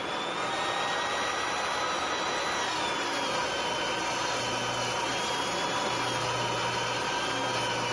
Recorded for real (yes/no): yes